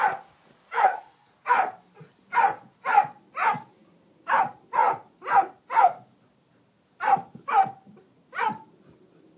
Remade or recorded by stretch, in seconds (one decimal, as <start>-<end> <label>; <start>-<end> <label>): 0.0-0.8 recorded; 0.8-1.3 remade; 1.3-9.4 recorded